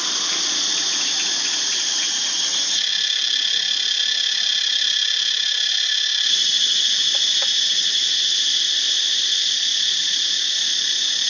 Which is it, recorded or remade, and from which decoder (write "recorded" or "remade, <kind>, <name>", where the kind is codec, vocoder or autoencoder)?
remade, vocoder, BigVGAN v2